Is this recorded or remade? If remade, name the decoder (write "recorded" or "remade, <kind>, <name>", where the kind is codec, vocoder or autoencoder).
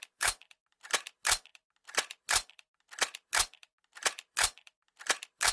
remade, vocoder, BigVGAN v2